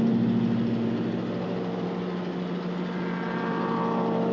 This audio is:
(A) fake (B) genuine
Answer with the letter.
B